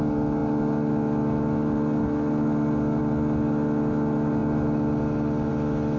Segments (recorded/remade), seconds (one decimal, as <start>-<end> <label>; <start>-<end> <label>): 0.0-6.0 recorded